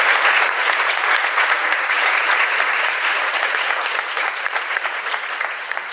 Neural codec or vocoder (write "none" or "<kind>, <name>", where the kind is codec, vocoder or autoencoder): vocoder, Vocos